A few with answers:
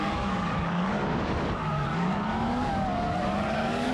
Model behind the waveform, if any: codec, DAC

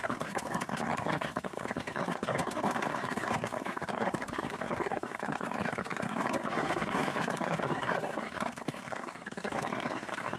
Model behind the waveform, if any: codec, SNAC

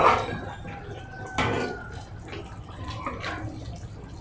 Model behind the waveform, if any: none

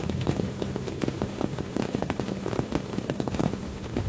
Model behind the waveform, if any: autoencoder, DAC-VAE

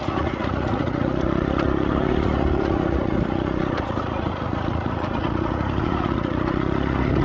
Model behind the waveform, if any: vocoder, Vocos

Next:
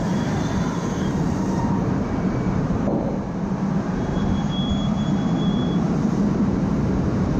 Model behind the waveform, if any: vocoder, BigVGAN v2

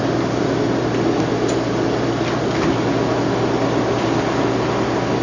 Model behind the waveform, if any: none